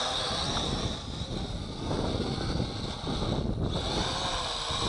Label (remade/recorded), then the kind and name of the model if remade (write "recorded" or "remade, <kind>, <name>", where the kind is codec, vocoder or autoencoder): recorded